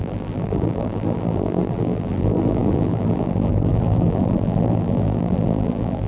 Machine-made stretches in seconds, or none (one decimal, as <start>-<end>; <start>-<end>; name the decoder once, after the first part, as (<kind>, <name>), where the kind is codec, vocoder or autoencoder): 0.0-6.1 (vocoder, BigVGAN v2)